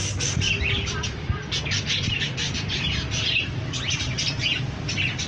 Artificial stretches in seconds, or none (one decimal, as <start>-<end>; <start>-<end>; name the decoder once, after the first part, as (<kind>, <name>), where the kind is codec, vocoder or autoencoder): none